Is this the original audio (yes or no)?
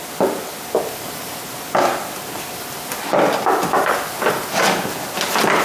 yes